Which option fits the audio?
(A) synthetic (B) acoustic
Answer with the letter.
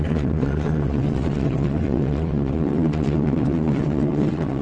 A